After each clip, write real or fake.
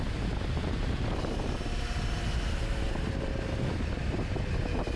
real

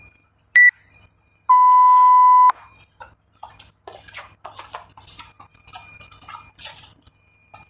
real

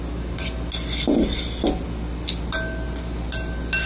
real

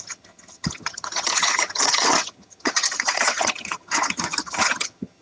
fake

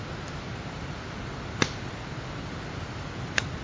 real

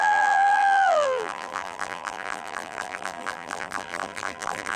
fake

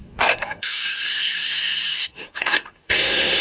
fake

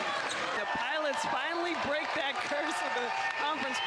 real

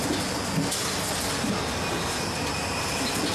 real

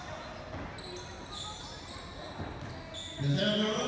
real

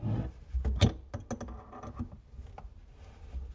real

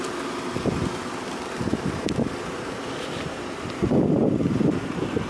real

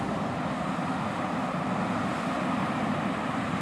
real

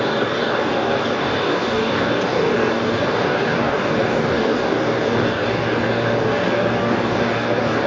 fake